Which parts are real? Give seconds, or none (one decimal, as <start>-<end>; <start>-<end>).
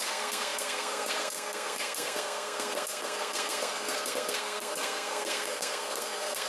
none